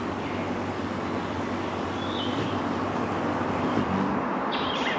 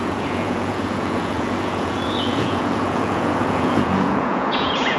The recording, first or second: first